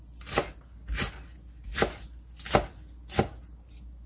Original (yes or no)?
yes